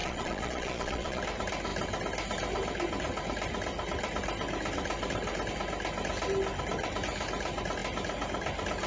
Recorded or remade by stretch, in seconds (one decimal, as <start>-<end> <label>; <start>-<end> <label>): 0.0-1.2 remade; 1.2-8.9 recorded